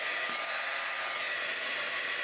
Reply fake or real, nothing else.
real